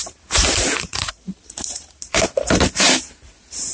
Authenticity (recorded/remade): remade